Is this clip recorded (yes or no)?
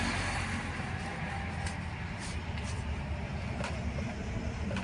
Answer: yes